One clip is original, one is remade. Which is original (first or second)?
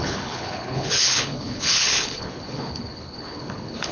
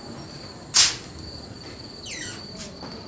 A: second